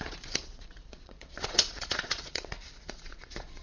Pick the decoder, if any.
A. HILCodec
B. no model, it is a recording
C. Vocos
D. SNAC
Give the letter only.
C